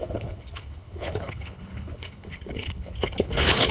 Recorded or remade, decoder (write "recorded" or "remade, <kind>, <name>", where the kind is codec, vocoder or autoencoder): remade, codec, HILCodec